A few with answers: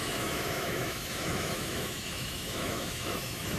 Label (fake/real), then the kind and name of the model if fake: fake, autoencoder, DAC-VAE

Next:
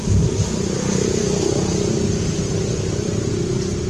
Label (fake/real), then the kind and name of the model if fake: real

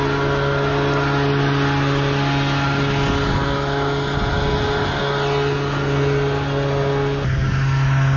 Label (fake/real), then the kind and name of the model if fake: real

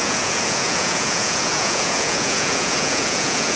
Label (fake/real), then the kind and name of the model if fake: fake, vocoder, Vocos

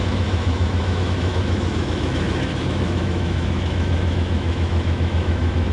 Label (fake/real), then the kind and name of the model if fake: fake, autoencoder, DAC-VAE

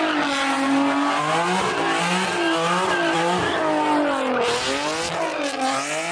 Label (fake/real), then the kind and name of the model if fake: real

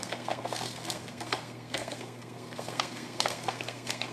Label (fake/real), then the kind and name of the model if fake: fake, codec, SNAC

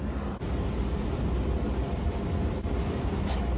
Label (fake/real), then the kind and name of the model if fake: real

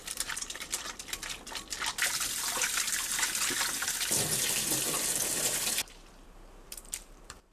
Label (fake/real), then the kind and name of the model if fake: fake, vocoder, BigVGAN v2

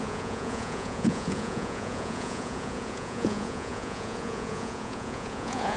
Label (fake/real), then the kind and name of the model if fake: fake, vocoder, Vocos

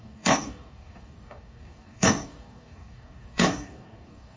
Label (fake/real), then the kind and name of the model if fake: fake, codec, DAC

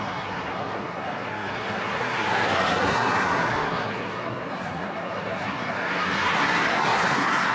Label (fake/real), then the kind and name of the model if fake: fake, codec, SNAC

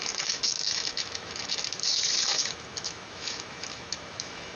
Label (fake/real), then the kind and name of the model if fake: fake, autoencoder, DAC-VAE